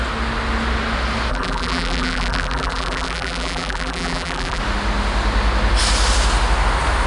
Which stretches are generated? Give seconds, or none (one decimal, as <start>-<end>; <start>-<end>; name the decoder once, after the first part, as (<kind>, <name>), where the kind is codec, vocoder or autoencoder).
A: 1.3-4.6 (vocoder, BigVGAN v2)